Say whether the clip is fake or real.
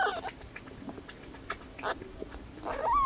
real